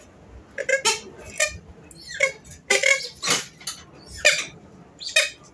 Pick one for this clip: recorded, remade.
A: recorded